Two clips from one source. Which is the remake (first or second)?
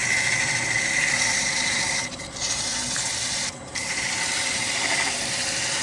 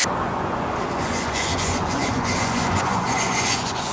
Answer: second